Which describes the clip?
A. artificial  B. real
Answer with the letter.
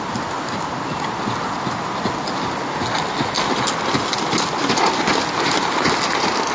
B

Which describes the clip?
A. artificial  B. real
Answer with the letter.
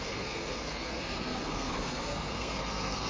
A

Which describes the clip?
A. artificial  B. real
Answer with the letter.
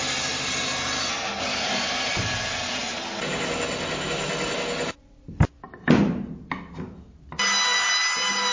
B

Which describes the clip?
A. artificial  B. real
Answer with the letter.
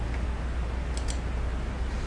B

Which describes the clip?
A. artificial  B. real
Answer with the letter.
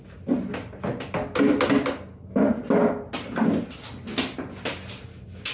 B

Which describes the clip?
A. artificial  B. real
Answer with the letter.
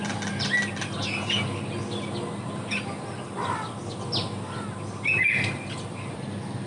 B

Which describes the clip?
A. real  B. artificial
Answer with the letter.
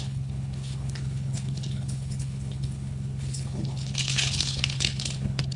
B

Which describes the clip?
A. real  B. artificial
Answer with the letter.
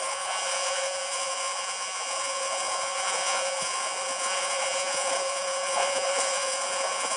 B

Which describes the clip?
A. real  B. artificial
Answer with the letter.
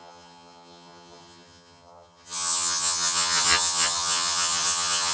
B